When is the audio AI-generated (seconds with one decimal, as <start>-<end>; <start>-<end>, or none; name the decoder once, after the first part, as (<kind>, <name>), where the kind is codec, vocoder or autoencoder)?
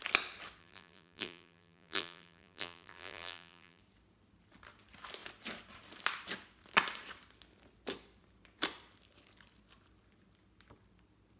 0.6-3.8 (vocoder, BigVGAN v2)